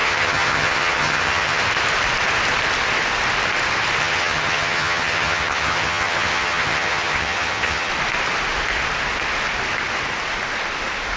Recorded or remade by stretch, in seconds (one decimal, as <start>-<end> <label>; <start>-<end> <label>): 0.0-1.6 remade; 1.6-4.0 recorded; 4.0-7.9 remade; 7.9-11.2 recorded